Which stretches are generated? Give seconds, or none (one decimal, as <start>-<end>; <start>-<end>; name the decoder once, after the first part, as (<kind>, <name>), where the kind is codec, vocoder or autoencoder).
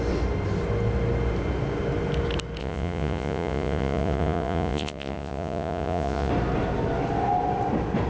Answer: 2.6-6.3 (vocoder, Vocos)